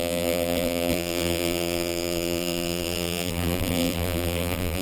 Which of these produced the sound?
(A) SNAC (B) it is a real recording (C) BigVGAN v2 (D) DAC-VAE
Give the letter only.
C